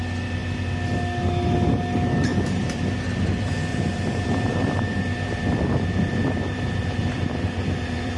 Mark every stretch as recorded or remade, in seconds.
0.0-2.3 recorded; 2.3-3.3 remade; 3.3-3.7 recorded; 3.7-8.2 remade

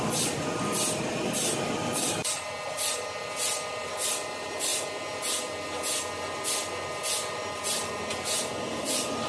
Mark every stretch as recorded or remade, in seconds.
0.0-9.3 recorded

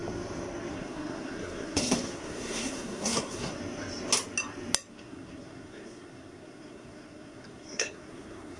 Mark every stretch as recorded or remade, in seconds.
0.0-0.7 recorded; 0.7-3.6 remade; 3.6-4.9 recorded; 4.9-8.6 remade

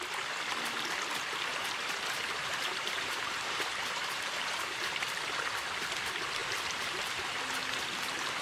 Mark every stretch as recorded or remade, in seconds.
0.0-1.5 recorded; 1.5-5.4 remade; 5.4-6.4 recorded; 6.4-7.3 remade; 7.3-8.4 recorded